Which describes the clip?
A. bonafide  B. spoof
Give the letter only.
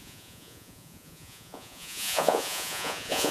B